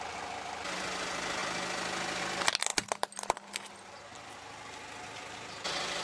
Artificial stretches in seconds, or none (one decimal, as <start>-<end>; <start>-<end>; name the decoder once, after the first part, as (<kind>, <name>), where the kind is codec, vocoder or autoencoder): none